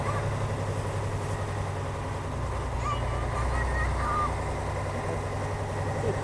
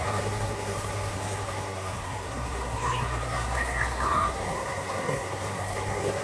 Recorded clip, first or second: first